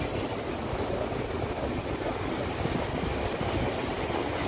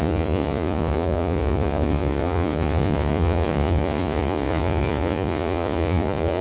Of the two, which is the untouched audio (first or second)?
first